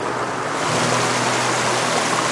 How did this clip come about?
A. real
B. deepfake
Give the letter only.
A